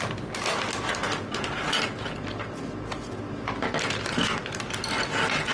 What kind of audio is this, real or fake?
real